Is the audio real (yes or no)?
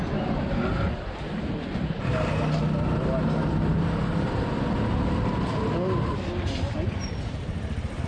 yes